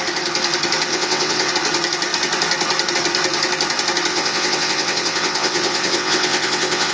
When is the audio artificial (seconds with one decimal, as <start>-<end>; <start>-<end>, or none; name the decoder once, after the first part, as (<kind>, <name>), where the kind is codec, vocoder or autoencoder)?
0.9-1.5 (vocoder, WaveNeXt); 4.1-6.9